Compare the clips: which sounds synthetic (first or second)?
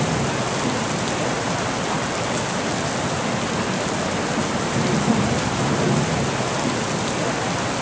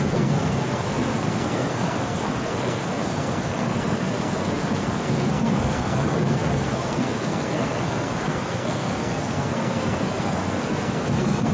second